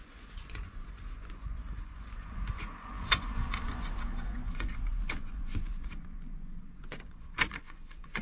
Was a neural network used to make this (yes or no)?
yes